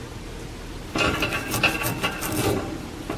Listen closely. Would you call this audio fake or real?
real